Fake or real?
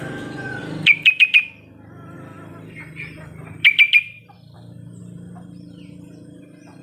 real